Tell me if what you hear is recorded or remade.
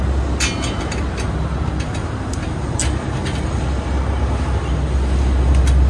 recorded